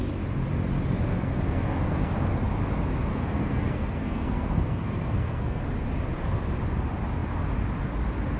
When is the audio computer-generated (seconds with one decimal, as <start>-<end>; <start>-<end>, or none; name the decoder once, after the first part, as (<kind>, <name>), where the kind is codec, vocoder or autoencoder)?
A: 1.1-2.3 (codec, SNAC); 3.1-5.6